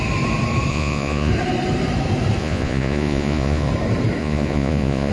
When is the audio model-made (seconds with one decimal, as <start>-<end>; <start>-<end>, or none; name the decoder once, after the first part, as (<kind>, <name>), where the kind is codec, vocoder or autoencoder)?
0.7-1.3 (vocoder, Vocos); 2.4-3.7; 4.2-5.1